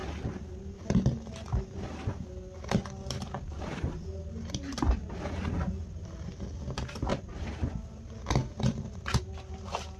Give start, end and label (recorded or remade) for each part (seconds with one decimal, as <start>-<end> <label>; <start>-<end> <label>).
0.0-0.6 remade; 0.6-7.1 recorded; 7.1-7.7 remade; 7.7-10.0 recorded